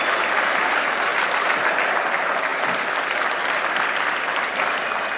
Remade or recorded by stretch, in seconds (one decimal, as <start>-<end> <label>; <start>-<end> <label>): 0.0-5.2 recorded